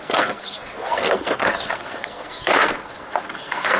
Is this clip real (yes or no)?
no